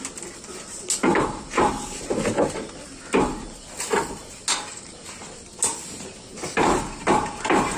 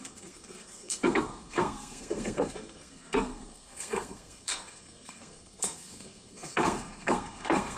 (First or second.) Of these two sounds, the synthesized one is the second